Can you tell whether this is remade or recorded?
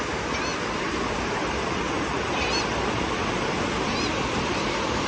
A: recorded